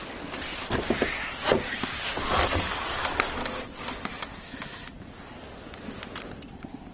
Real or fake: real